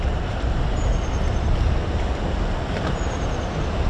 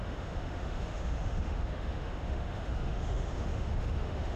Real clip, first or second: first